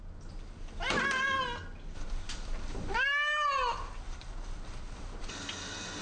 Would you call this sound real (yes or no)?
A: yes